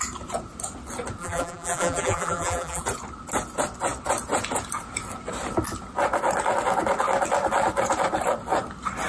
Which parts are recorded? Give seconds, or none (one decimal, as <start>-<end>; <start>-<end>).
0.0-1.2; 2.8-9.1